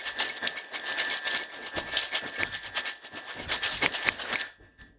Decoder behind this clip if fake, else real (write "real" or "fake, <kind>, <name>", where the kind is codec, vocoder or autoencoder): real